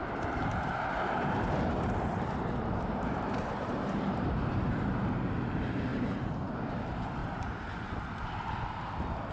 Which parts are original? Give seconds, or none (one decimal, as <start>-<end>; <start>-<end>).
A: 4.8-5.9; 6.7-7.2; 7.9-9.3